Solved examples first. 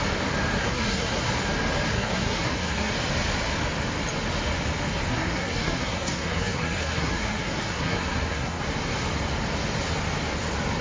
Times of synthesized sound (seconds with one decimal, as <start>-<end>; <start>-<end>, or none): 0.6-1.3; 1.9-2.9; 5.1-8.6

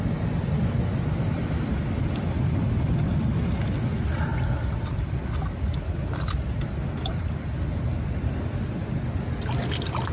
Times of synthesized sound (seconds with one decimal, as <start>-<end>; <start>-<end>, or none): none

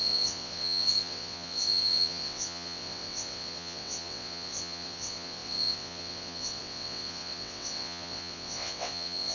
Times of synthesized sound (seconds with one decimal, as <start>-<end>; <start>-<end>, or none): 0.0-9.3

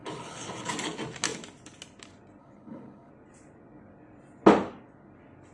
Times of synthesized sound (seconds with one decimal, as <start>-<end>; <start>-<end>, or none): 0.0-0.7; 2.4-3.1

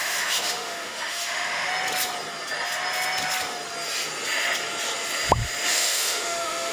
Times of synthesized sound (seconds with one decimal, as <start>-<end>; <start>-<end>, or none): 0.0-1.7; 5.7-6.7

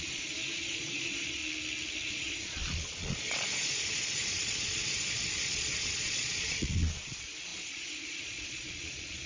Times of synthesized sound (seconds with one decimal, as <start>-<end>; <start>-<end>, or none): 0.0-1.4; 2.1-9.3